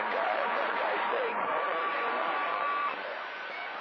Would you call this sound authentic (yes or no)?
no